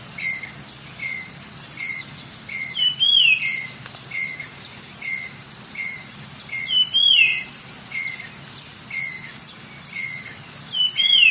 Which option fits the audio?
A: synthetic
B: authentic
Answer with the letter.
B